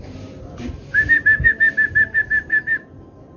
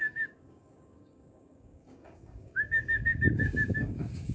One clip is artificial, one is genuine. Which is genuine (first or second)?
first